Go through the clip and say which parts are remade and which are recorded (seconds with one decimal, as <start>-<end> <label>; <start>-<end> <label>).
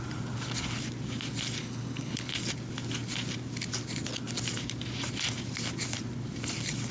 0.0-1.6 recorded; 1.6-2.3 remade; 2.3-6.9 recorded